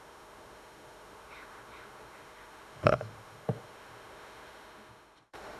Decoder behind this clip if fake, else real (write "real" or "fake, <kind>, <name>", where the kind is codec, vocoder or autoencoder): fake, autoencoder, DAC-VAE